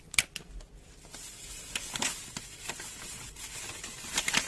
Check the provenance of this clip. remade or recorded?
recorded